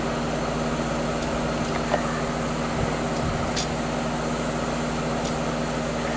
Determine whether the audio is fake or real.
real